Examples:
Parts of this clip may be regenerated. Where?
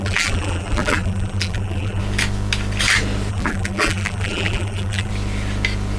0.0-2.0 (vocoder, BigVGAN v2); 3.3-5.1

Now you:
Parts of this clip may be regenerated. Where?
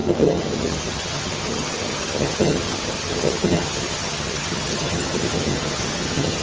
0.0-6.4 (vocoder, HiFi-GAN)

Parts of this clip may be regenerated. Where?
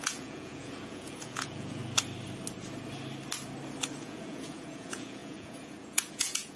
0.0-1.8 (vocoder, Vocos); 4.0-6.6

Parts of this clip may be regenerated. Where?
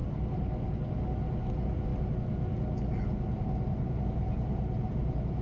none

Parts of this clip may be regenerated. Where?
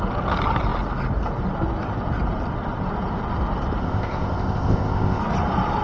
3.8-5.2 (codec, ZipCodec)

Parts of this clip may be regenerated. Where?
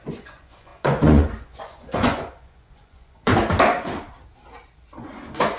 0.0-3.3 (vocoder, Vocos); 5.0-5.6